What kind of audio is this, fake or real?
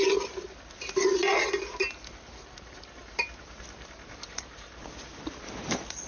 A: real